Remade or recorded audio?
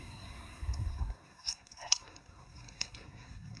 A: remade